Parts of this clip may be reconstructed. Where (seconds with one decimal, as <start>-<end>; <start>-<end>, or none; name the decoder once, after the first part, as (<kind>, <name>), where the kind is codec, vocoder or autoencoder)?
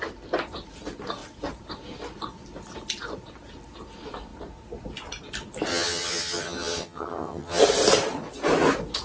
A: 5.7-7.6 (vocoder, HiFi-GAN)